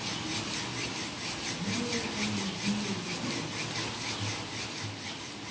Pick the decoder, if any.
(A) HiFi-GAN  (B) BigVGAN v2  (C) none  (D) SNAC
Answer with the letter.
C